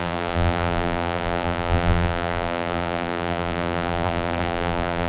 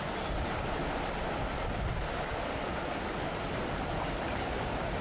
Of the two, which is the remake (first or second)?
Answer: first